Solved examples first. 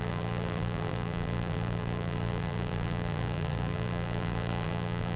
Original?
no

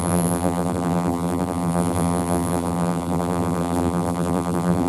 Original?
no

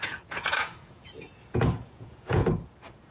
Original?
no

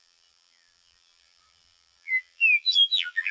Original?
no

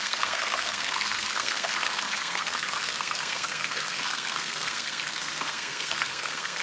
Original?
no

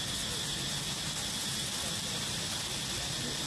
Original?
yes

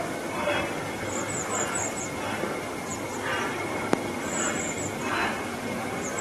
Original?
yes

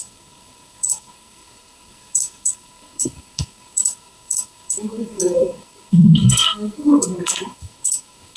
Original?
no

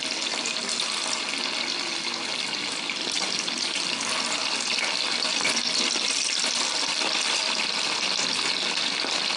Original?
yes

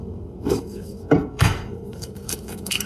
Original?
no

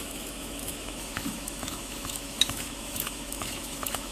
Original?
no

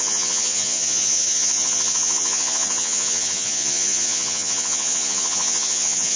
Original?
no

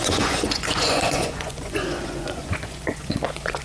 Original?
no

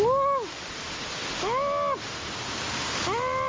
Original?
yes